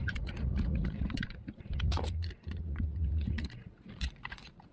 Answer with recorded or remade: remade